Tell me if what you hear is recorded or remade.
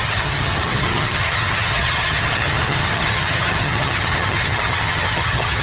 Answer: remade